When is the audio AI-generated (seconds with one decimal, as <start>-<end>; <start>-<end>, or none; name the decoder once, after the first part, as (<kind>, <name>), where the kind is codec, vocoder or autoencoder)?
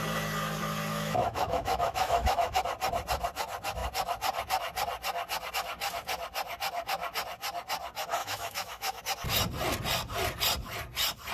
0.9-2.6 (autoencoder, DAC-VAE); 8.2-9.0